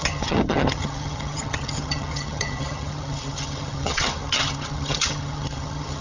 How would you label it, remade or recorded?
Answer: remade